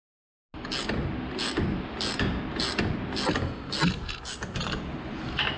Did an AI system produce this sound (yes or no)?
no